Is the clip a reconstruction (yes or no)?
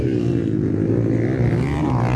no